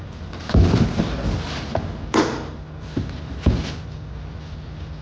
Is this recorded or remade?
recorded